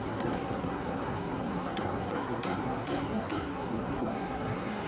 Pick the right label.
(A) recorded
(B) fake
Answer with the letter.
B